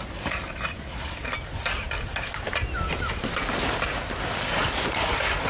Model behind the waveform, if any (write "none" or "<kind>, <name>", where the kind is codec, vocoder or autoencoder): none